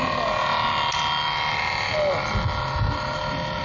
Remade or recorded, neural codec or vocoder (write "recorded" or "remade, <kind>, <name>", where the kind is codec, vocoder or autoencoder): recorded